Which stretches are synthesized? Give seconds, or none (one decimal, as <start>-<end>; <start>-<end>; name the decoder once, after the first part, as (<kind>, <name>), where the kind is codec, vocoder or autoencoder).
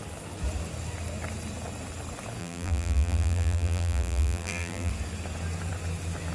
2.4-4.9 (vocoder, BigVGAN v2)